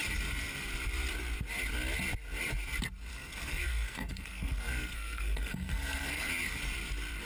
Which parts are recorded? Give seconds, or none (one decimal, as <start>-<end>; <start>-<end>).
0.0-3.1; 6.3-7.3